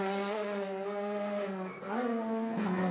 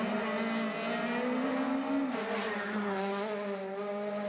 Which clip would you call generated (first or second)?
first